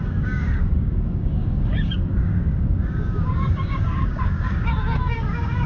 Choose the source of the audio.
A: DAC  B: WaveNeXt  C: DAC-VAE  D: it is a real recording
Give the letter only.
A